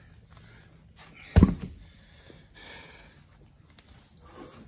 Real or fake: real